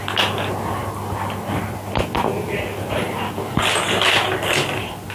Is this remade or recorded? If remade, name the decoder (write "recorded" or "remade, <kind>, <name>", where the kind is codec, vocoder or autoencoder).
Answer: recorded